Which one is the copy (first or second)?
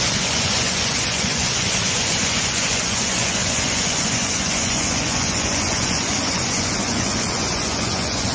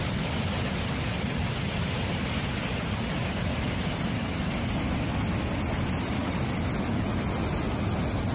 first